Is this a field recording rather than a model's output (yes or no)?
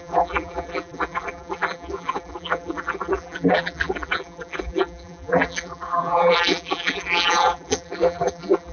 no